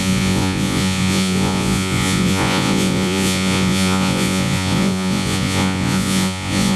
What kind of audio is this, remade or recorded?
remade